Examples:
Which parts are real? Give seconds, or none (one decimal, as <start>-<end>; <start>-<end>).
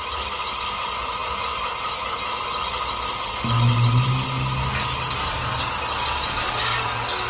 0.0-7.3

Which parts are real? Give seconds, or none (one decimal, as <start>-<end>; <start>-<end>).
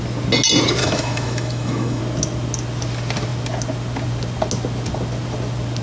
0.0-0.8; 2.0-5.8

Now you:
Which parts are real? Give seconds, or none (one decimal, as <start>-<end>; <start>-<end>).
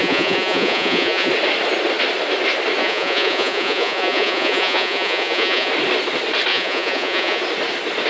1.3-2.8; 5.7-6.5; 7.4-8.1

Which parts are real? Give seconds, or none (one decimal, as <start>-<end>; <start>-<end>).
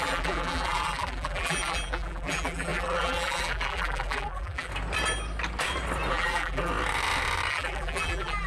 4.7-6.1; 6.7-7.5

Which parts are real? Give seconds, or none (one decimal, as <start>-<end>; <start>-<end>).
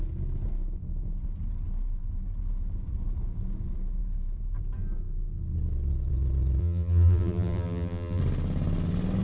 0.0-6.6; 8.2-9.2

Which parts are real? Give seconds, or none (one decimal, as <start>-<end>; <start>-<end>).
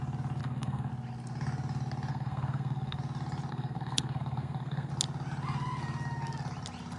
0.0-0.4; 0.9-2.1; 3.0-3.5; 4.9-7.0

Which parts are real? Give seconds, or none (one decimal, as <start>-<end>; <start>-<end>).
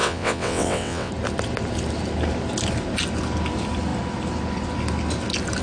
1.1-5.6